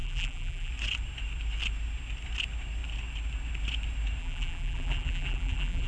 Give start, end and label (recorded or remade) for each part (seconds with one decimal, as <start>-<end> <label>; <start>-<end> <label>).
0.0-0.7 remade; 0.7-4.2 recorded; 4.2-5.9 remade